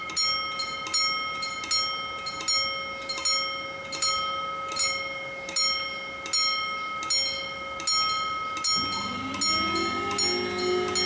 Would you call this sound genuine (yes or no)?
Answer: yes